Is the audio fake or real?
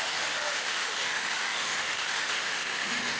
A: fake